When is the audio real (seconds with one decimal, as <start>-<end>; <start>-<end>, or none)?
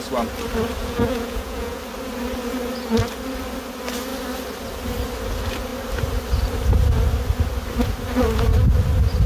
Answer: 0.0-0.8; 1.8-9.3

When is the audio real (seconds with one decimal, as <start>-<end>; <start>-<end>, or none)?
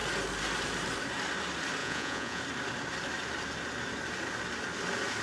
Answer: 0.0-1.8; 2.4-5.2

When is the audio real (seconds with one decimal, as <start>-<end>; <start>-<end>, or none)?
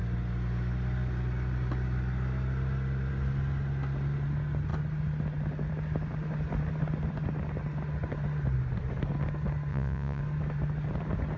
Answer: 0.0-9.7; 10.2-11.4